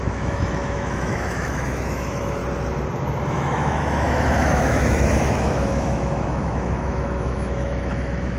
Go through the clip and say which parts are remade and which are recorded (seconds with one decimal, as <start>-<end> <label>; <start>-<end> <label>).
0.0-2.4 remade; 2.4-3.3 recorded; 3.3-8.4 remade